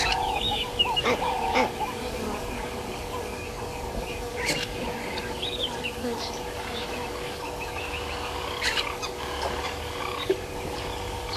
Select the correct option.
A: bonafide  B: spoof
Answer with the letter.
B